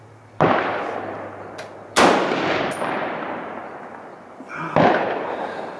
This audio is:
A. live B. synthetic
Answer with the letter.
A